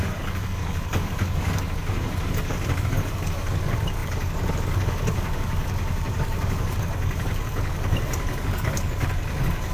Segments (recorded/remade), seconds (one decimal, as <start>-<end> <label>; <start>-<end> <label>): 0.0-9.7 remade